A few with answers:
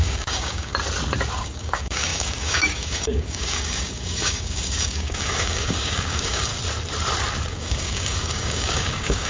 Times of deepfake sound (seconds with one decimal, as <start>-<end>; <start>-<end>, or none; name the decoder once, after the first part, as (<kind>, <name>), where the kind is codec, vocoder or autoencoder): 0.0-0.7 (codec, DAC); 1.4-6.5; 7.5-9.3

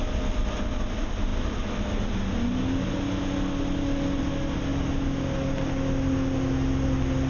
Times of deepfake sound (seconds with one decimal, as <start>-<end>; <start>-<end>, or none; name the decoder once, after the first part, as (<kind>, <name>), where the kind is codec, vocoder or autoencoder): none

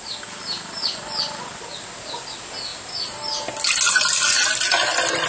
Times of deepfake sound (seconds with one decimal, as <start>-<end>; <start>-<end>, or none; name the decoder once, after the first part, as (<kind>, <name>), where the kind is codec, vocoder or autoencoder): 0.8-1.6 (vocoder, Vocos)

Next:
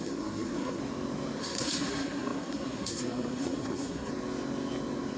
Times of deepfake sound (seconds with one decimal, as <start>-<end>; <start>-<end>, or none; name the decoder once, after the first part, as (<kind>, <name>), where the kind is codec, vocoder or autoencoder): 0.0-0.8 (codec, SNAC); 1.4-4.1

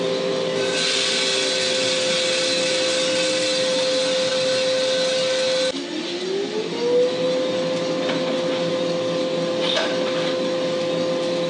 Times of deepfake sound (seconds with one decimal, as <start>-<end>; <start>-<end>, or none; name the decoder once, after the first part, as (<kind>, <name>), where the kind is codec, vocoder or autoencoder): none

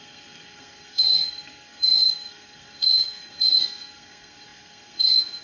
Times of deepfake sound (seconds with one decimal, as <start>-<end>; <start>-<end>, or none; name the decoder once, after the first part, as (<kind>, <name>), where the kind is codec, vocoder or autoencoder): 0.0-5.4 (codec, SNAC)

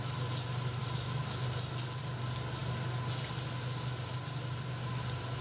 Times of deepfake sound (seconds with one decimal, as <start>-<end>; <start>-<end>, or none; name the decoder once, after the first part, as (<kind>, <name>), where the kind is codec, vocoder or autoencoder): none